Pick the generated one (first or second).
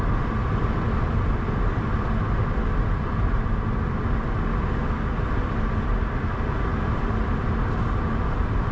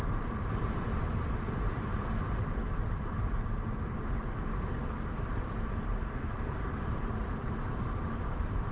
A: second